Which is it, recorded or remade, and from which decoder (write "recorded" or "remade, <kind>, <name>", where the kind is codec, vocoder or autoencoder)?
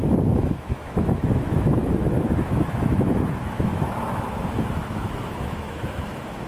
remade, autoencoder, DAC-VAE